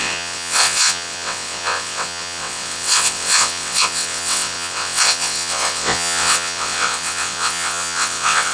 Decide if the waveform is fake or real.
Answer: fake